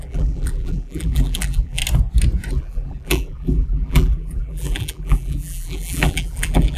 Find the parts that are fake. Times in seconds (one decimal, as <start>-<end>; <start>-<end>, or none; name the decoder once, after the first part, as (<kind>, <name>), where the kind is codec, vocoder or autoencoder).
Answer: 0.0-1.8 (vocoder, BigVGAN v2); 2.5-6.8